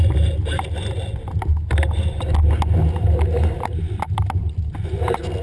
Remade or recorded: recorded